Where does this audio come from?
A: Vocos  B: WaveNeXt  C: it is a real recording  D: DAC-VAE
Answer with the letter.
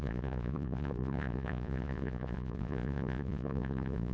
A